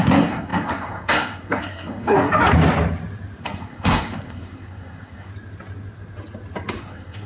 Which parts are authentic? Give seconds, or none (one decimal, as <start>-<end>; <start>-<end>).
2.3-3.4; 5.3-6.8